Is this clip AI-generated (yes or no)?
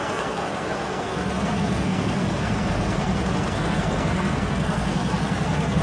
yes